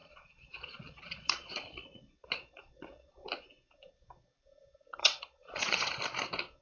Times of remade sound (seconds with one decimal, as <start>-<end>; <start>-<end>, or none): 0.0-3.1; 5.0-5.9